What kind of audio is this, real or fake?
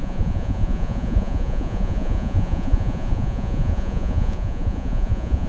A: fake